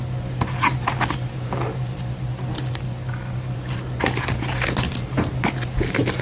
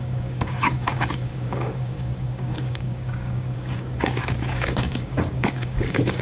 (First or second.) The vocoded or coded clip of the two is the second